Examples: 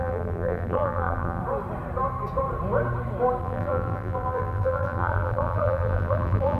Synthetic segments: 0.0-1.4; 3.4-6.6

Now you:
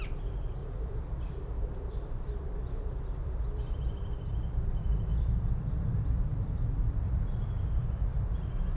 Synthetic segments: 0.6-4.3; 5.1-6.1

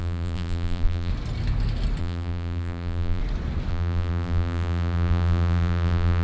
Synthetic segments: 0.0-1.1; 2.0-3.2; 3.7-6.2

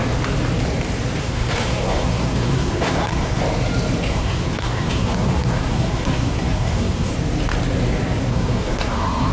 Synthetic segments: 1.2-3.4; 4.1-7.1; 8.3-9.3

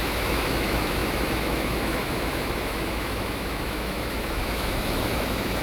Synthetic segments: 0.0-5.6